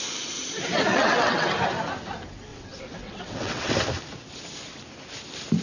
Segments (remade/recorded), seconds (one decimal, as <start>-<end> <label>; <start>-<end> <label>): 0.0-0.9 recorded; 0.9-1.5 remade; 1.5-2.5 recorded; 2.5-3.7 remade; 3.7-5.6 recorded